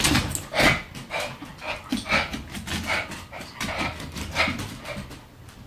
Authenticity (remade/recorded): recorded